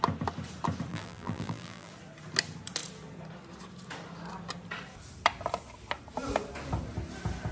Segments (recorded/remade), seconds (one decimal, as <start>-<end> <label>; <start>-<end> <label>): 0.0-0.9 recorded; 0.9-1.9 remade; 1.9-7.5 recorded